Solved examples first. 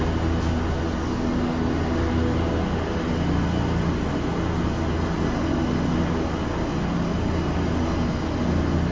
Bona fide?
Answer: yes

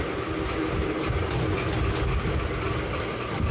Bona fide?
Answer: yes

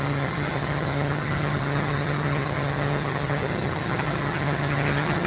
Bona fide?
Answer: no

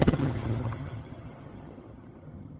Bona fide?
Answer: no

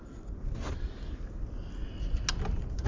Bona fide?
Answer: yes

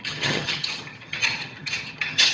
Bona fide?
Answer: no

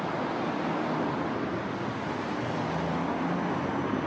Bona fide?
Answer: yes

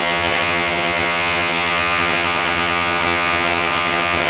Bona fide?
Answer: no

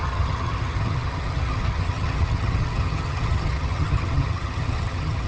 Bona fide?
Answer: no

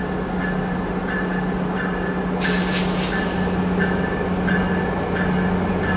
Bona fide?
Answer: yes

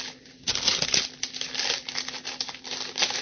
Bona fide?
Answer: yes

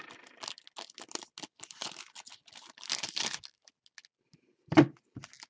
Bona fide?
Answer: yes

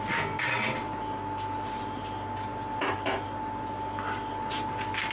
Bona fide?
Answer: yes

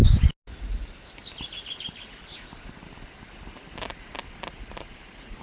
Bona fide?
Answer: yes